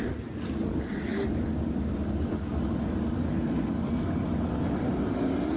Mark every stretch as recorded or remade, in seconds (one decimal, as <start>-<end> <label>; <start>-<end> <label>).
0.0-5.6 recorded